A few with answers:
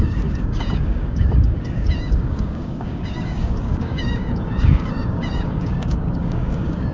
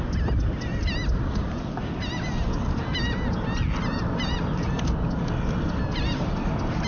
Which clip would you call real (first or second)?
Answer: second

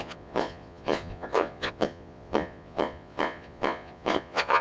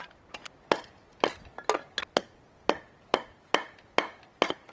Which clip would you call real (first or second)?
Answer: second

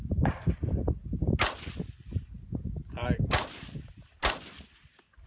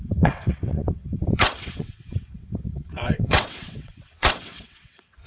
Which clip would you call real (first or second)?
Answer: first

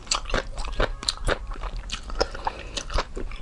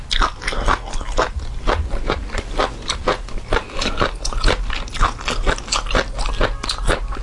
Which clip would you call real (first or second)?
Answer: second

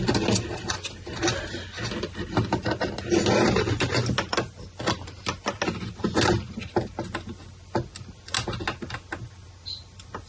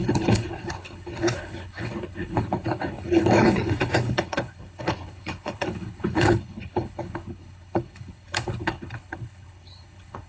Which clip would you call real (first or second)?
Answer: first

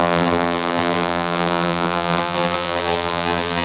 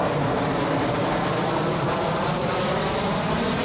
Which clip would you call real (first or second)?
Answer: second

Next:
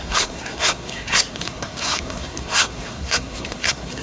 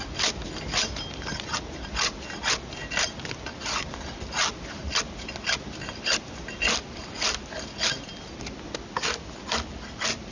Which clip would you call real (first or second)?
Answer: second